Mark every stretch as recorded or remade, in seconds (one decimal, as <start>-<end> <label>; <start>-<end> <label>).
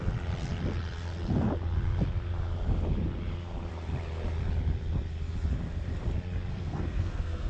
0.0-6.5 recorded; 6.5-7.5 remade